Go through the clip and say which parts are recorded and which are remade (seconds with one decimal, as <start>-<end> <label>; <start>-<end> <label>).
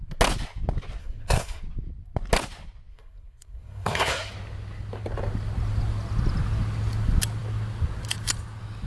0.0-1.0 recorded; 1.0-1.6 remade; 1.6-2.9 recorded; 2.9-4.3 remade; 4.3-8.9 recorded